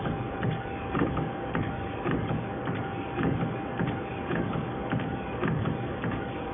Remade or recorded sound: remade